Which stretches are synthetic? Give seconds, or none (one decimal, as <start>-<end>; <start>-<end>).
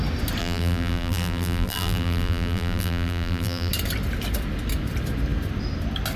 0.4-3.7